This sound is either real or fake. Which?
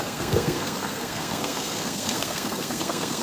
fake